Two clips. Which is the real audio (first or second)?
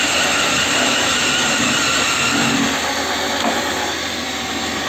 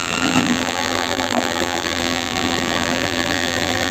first